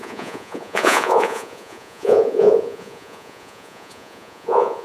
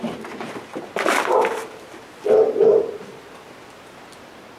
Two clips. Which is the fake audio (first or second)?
first